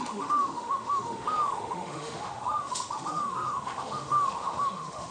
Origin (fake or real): fake